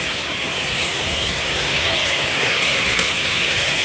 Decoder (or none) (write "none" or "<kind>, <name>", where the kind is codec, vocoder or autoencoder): codec, SNAC